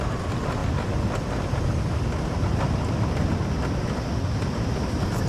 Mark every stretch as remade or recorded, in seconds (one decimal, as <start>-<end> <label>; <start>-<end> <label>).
0.0-5.3 recorded